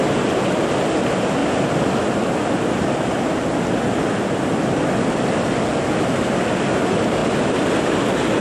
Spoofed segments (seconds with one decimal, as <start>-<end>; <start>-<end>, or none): none